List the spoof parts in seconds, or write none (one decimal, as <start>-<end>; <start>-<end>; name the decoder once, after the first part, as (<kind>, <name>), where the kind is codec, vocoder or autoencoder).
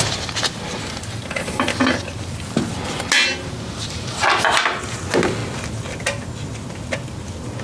none